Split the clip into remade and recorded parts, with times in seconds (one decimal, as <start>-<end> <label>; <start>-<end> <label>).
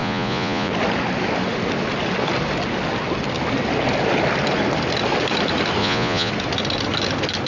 0.0-0.7 remade; 0.7-5.8 recorded; 5.8-6.3 remade; 6.3-7.5 recorded